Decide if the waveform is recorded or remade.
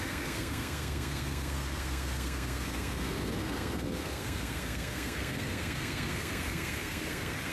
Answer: remade